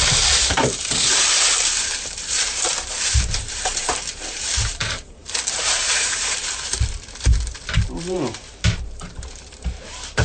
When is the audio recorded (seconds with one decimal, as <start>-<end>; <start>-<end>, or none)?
none

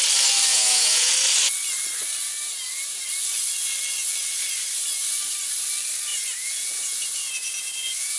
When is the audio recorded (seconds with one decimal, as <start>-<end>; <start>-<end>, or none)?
0.0-0.5; 1.1-6.1

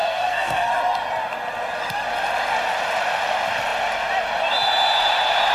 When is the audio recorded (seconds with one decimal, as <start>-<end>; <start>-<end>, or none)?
0.7-5.5

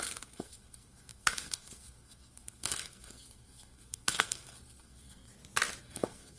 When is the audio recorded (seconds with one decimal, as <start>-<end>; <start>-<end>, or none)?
5.3-5.8

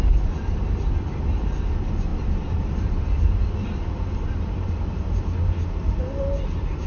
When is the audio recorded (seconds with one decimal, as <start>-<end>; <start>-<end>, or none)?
0.0-2.1; 2.9-6.9